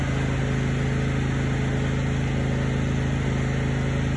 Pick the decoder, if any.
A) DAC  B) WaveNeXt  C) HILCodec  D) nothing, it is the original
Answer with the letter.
D